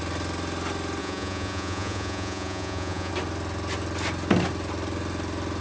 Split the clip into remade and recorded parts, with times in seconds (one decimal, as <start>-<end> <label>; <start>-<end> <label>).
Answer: 0.0-1.0 recorded; 1.0-3.1 remade; 3.1-5.6 recorded